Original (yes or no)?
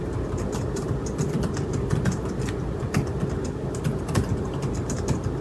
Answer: yes